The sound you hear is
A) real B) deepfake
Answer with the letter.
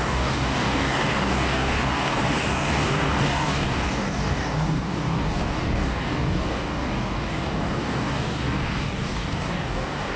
B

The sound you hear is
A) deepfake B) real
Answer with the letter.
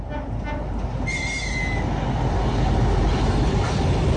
B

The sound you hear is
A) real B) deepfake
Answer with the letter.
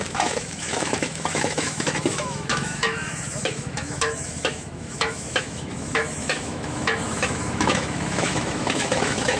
B